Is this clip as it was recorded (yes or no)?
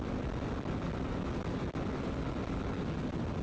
yes